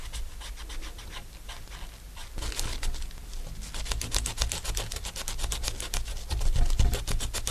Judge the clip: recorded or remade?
recorded